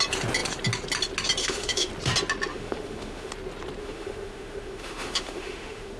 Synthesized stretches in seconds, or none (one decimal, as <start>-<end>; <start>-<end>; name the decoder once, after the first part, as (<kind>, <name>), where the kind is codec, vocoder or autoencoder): 1.4-1.9 (autoencoder, DAC-VAE); 2.5-3.3; 3.8-6.0